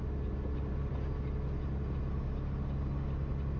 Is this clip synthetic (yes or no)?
no